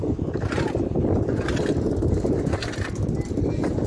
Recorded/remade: recorded